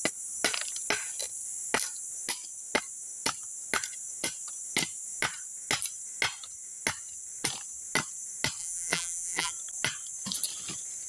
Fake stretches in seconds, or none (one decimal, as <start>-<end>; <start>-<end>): 8.6-9.5

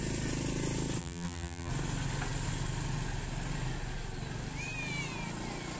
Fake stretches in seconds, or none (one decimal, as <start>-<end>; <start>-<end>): 1.0-1.7

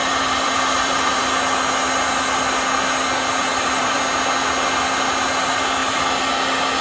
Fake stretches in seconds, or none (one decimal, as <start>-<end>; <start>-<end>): 0.0-1.2; 3.5-4.0

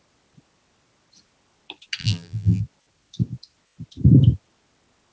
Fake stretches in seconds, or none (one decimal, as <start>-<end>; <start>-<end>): 2.0-2.6

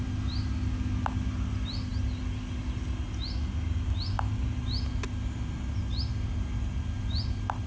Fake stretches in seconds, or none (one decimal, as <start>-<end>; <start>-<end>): none

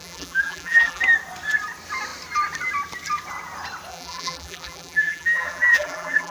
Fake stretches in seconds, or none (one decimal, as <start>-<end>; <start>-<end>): 0.0-1.0; 3.9-6.3

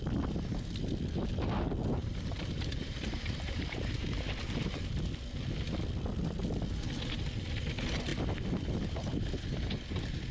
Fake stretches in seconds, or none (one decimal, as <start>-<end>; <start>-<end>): 2.0-5.0